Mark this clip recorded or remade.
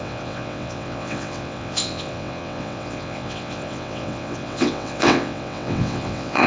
remade